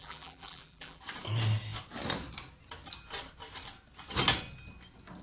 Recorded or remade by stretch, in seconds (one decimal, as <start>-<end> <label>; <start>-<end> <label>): 0.0-1.0 remade; 1.0-5.2 recorded